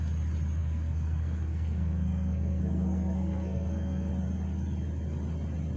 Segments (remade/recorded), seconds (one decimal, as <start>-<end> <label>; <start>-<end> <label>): 0.0-0.6 recorded; 0.6-4.1 remade; 4.1-5.8 recorded